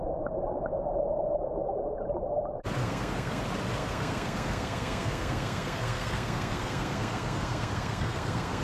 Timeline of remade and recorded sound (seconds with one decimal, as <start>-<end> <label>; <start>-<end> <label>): 0.0-2.8 recorded; 2.8-3.4 remade; 3.4-3.8 recorded; 3.8-8.6 remade